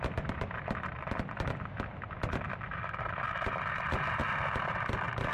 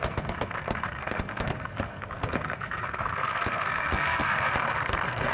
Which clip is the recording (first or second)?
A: first